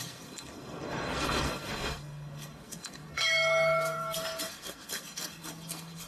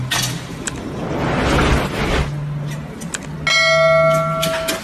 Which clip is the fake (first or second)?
first